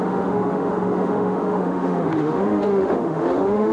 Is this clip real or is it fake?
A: fake